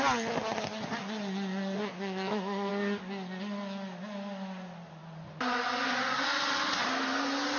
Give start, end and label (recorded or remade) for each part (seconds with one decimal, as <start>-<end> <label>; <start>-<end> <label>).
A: 0.0-1.9 recorded; 1.9-2.7 remade; 2.7-7.6 recorded